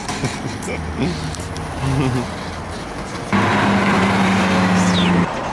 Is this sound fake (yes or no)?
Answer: no